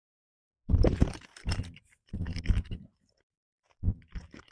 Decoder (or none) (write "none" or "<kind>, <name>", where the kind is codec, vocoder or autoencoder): vocoder, BigVGAN v2